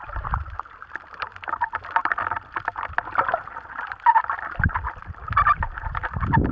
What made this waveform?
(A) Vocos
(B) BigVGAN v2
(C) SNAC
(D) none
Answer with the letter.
D